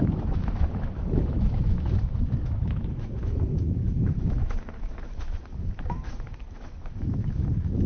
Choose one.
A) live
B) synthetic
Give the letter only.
B